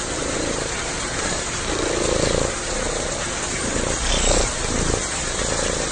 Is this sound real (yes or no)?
yes